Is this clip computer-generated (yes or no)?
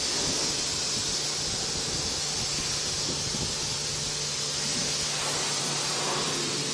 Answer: no